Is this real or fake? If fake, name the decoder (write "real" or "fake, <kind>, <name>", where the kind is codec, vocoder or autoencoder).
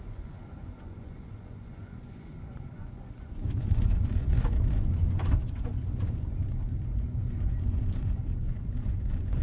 fake, vocoder, Vocos